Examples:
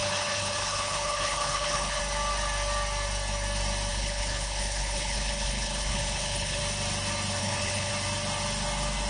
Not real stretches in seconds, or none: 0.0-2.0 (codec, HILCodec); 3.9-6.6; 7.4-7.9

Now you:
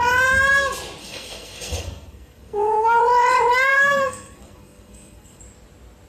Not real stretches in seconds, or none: 1.0-3.0 (codec, SNAC); 3.7-5.4

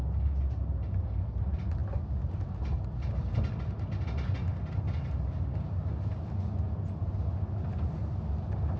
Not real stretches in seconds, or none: none